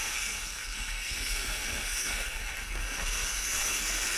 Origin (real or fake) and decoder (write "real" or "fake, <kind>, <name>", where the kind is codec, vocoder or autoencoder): fake, codec, SNAC